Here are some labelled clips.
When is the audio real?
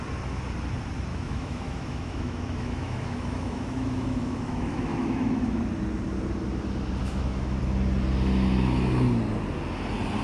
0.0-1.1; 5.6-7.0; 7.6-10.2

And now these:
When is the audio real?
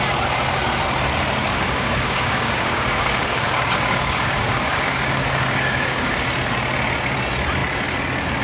0.0-1.4; 6.1-8.4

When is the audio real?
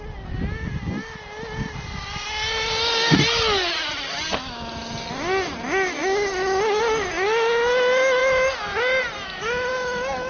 0.0-10.3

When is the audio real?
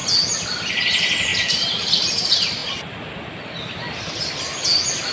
0.0-5.1